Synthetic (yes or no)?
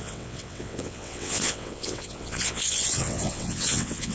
yes